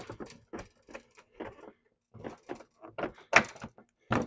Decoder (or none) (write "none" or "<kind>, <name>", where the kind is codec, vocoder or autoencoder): none